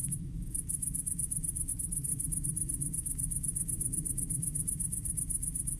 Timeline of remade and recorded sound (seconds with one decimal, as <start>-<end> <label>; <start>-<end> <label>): 0.0-1.7 remade; 1.7-2.1 recorded; 2.1-5.8 remade